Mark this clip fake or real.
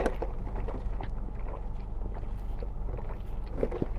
real